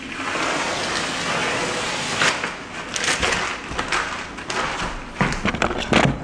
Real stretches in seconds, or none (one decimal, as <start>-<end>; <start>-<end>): 0.0-6.2

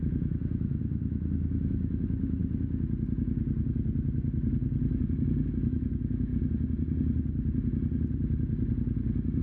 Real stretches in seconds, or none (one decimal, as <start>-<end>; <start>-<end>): 2.4-5.5; 6.3-9.4

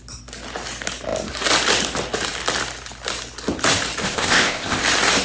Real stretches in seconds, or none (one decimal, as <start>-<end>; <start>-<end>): 0.0-4.0; 4.8-5.2